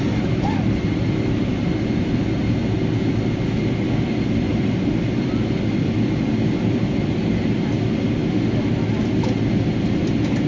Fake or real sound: fake